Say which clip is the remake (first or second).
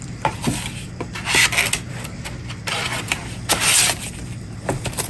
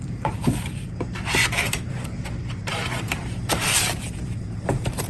second